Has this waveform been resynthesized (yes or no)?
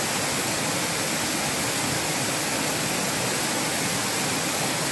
no